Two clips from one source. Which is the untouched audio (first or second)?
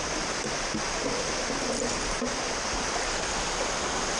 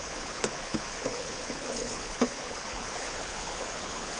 first